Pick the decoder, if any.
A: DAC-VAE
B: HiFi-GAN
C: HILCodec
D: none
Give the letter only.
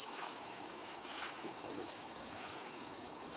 A